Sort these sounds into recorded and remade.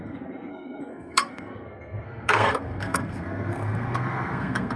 remade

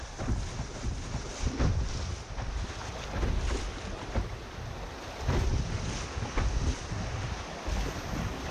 recorded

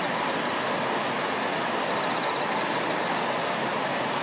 recorded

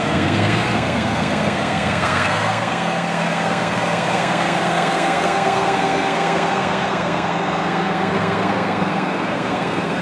remade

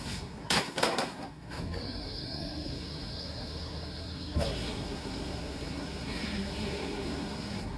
remade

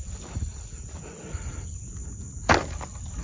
recorded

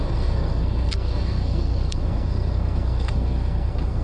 remade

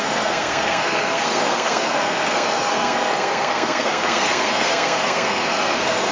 remade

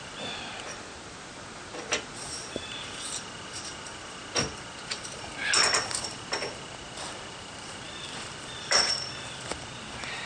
recorded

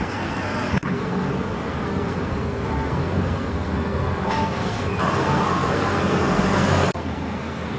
remade